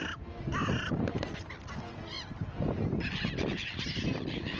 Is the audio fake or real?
real